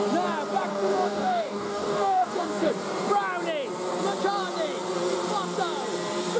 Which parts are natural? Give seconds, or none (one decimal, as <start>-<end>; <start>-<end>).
0.0-0.7; 2.7-6.4